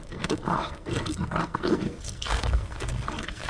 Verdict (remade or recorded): remade